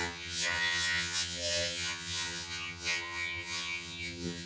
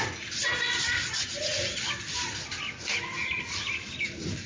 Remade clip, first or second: first